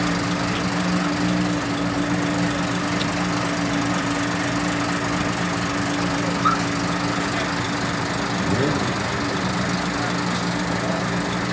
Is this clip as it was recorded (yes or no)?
yes